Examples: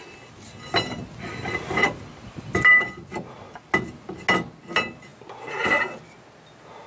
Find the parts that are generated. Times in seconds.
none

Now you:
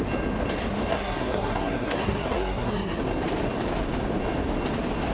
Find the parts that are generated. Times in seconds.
0.9-3.0 (codec, SNAC)

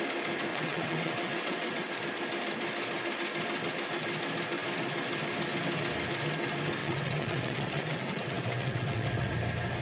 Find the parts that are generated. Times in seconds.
0.5-1.9 (vocoder, WaveNeXt); 6.8-9.3

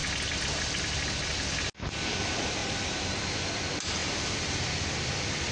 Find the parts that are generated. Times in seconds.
2.6-3.2 (vocoder, BigVGAN v2); 4.0-4.9

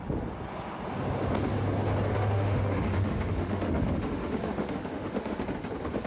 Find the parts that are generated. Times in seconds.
2.1-5.4 (autoencoder, DAC-VAE)